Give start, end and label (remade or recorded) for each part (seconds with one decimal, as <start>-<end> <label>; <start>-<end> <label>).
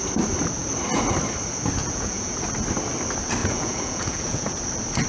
0.0-1.8 recorded; 1.8-2.4 remade; 2.4-3.4 recorded; 3.4-4.6 remade; 4.6-5.1 recorded